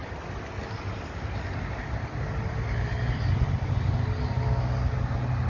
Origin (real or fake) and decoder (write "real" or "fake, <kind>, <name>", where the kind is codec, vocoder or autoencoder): real